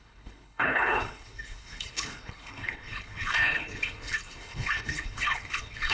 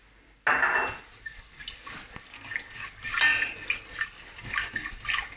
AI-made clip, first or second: first